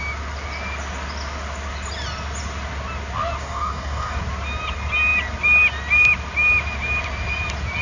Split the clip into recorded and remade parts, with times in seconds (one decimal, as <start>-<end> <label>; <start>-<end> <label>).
0.0-3.4 recorded; 3.4-4.2 remade; 4.2-7.8 recorded